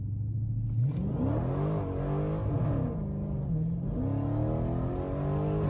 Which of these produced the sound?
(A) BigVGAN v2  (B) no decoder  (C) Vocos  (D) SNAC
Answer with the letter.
B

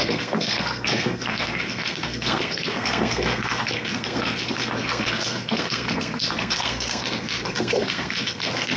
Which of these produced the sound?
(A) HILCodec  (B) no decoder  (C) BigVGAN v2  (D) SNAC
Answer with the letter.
D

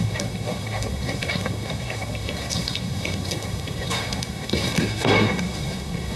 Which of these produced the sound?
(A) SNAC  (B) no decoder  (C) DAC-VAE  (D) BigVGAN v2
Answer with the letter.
A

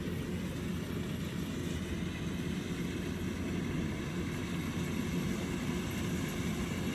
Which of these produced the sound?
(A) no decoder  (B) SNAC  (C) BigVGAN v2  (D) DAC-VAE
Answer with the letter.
A